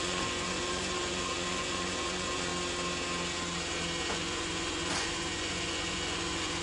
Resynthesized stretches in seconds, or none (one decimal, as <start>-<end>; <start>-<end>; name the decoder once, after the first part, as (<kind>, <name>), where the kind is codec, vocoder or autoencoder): 0.0-2.5 (vocoder, Vocos); 4.1-6.6